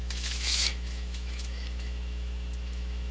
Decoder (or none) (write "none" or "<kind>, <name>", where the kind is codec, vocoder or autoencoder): autoencoder, DAC-VAE